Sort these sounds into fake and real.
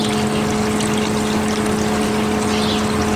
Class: real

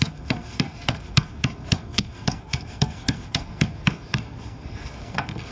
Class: fake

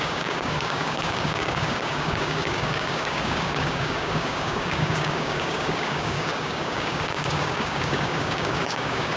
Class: fake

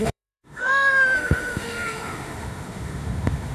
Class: fake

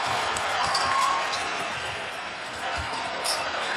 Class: fake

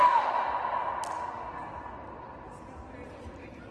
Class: real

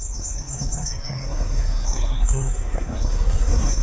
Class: fake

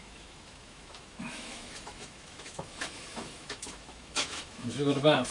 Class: fake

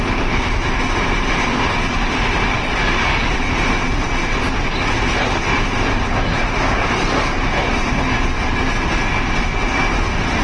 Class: real